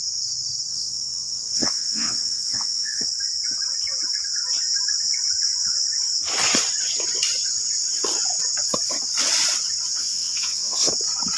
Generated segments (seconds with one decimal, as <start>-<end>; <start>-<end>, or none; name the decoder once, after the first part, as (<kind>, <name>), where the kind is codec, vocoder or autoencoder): 0.7-3.0 (vocoder, WaveNeXt); 10.0-10.9